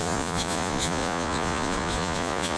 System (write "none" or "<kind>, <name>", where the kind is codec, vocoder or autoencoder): vocoder, Vocos